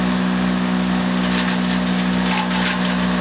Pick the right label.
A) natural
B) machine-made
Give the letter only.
A